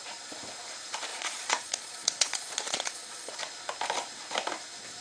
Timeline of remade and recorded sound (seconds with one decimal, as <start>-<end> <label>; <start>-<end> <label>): 0.0-1.1 recorded; 1.1-3.3 remade; 3.3-5.0 recorded